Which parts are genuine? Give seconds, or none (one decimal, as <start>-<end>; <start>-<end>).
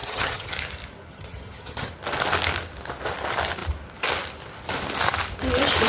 0.5-1.1; 1.9-5.9